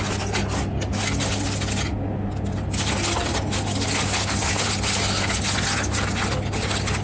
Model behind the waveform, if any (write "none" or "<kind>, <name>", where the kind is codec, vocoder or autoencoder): none